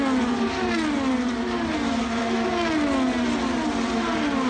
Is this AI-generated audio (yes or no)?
no